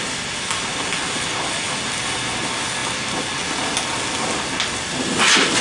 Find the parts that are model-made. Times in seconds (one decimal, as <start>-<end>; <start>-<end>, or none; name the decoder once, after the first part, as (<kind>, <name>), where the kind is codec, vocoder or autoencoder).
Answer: none

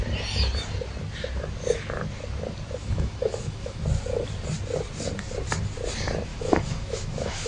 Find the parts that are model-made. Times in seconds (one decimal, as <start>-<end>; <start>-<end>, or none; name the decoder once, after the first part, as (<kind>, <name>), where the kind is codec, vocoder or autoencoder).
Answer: 2.8-3.8 (autoencoder, DAC-VAE); 6.3-7.5